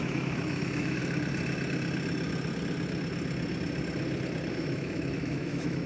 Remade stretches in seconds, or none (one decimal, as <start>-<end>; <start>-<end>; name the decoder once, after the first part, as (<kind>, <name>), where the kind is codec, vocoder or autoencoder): 0.0-1.0 (autoencoder, DAC-VAE); 4.5-5.9